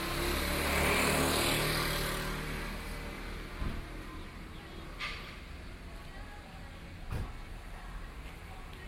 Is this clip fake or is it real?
real